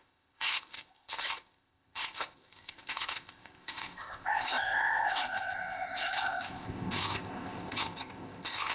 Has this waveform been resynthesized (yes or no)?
yes